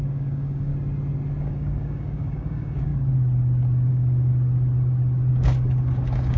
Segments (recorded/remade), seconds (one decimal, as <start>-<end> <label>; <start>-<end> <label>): 0.0-0.7 remade; 0.7-1.4 recorded; 1.4-2.9 remade; 2.9-3.9 recorded; 3.9-4.3 remade; 4.3-5.3 recorded; 5.3-6.4 remade